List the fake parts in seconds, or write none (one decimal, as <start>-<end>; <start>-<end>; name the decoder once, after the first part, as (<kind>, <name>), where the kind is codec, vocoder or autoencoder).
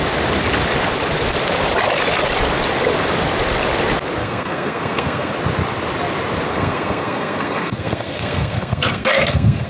4.2-5.3 (codec, SNAC); 6.5-9.7